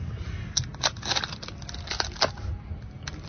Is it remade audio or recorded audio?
recorded